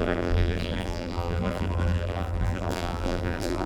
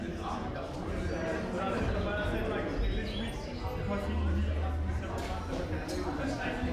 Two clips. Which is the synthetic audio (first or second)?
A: first